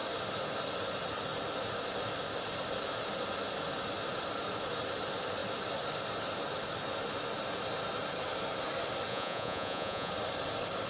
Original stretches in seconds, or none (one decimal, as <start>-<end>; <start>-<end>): 0.0-9.1; 10.1-10.9